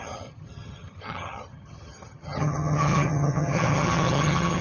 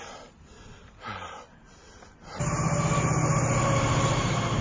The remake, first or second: first